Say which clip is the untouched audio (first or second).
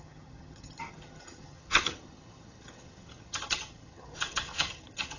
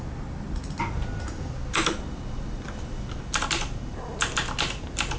second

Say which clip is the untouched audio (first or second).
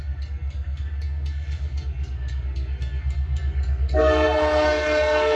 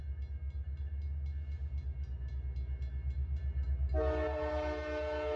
second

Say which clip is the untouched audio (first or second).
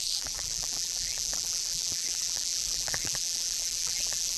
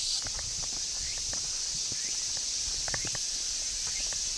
second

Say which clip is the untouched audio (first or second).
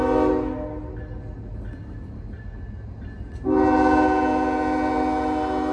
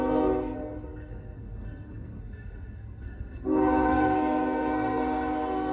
first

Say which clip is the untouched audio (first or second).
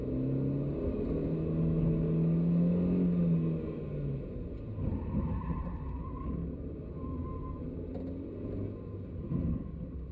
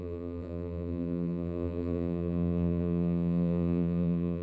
first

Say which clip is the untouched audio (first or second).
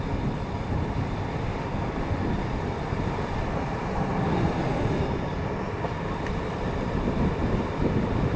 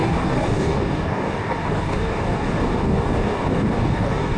first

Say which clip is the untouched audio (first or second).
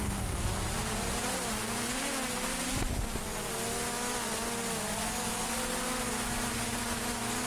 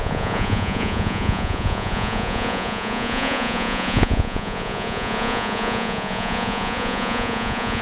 first